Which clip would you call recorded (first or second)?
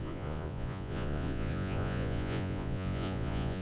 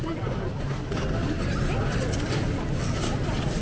second